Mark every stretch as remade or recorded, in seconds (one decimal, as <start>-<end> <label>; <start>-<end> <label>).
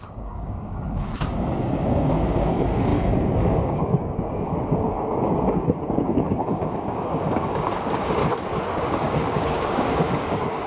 0.0-8.2 remade; 8.2-8.8 recorded; 8.8-10.7 remade